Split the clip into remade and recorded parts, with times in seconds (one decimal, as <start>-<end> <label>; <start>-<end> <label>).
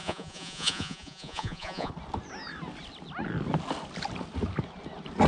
0.0-1.9 remade; 1.9-5.3 recorded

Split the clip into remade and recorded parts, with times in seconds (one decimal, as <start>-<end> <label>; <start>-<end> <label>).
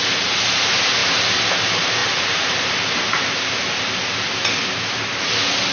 0.0-5.7 recorded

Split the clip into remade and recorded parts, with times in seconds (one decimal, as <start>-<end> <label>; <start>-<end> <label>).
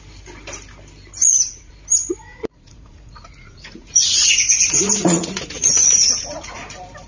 0.0-1.2 recorded; 1.2-1.7 remade; 1.7-2.3 recorded; 2.3-6.6 remade; 6.6-7.1 recorded